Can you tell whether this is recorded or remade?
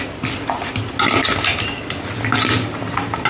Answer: recorded